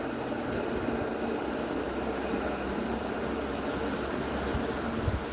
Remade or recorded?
recorded